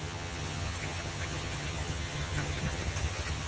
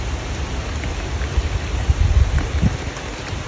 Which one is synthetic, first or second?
first